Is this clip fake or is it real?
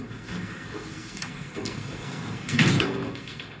fake